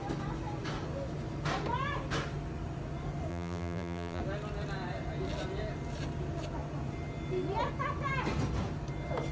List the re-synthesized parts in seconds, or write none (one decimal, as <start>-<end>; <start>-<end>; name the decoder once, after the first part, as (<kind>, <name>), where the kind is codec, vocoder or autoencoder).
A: 3.3-4.2 (vocoder, BigVGAN v2)